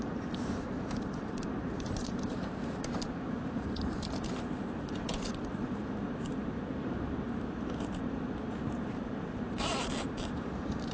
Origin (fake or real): fake